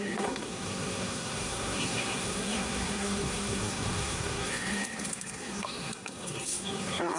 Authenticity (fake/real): fake